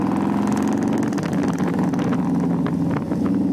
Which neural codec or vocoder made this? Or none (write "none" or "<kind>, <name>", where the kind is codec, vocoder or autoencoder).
none